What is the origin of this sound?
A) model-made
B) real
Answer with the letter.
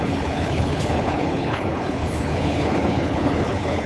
A